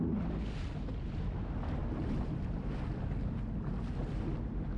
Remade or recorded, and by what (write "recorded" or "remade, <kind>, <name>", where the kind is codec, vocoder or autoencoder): recorded